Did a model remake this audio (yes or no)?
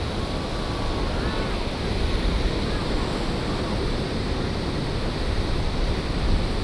no